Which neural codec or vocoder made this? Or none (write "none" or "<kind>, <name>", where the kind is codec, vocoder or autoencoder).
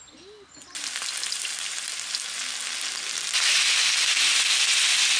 none